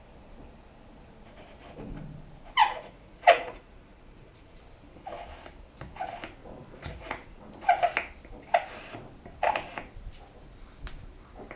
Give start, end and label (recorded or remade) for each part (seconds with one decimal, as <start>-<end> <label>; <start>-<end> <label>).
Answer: 0.0-2.6 recorded; 2.6-4.6 remade; 4.6-6.4 recorded; 6.4-7.4 remade; 7.4-11.6 recorded